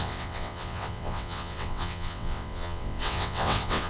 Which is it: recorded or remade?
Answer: remade